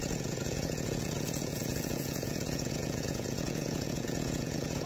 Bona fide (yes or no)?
no